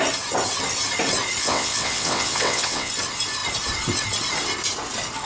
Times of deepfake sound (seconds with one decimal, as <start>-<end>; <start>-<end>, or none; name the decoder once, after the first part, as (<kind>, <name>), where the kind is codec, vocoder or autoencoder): 1.4-2.9 (vocoder, WaveNeXt)